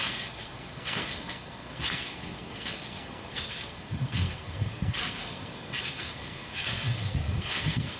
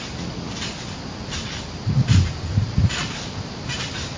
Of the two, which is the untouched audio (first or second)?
second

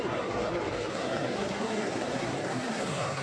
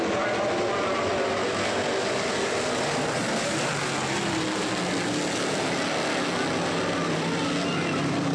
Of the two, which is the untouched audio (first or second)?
second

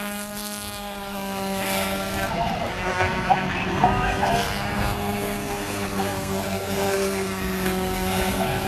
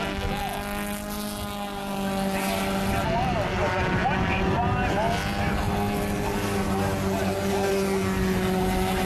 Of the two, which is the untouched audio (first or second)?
second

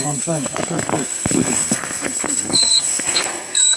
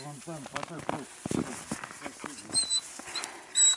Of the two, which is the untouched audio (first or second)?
second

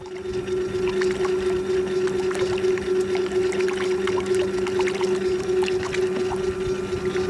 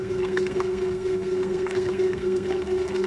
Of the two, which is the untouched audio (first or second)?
first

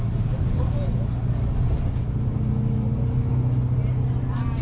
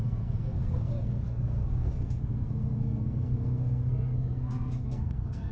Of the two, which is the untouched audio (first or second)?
first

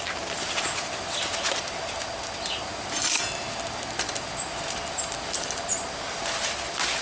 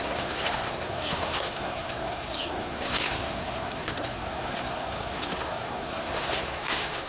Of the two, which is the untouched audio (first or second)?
first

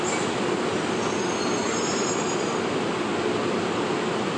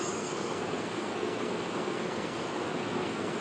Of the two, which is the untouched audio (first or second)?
first